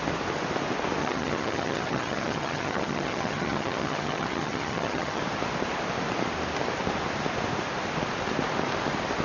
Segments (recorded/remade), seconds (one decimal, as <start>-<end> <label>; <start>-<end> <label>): 0.0-1.0 recorded; 1.0-5.2 remade; 5.2-9.2 recorded